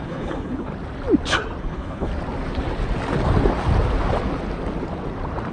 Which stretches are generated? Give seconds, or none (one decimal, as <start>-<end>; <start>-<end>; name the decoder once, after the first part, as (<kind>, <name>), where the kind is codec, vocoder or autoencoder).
0.0-0.7 (codec, HILCodec); 1.6-2.1